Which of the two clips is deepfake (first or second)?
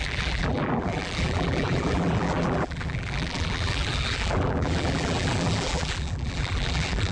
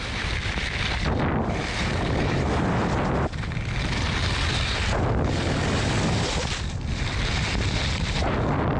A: first